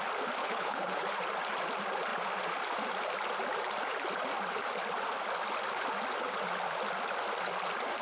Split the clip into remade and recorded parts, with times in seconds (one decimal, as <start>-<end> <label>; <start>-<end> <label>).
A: 0.0-0.4 recorded; 0.4-1.0 remade; 1.0-8.0 recorded